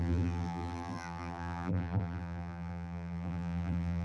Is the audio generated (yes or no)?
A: yes